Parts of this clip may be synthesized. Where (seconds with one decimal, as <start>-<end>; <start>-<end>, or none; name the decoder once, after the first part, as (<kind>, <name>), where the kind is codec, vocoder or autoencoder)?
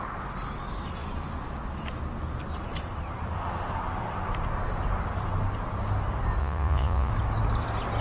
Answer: 6.4-7.1 (vocoder, Vocos)